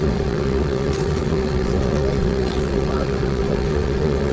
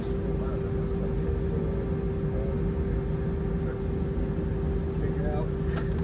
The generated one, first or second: first